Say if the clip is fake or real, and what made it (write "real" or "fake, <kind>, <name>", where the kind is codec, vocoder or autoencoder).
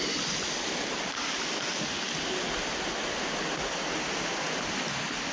real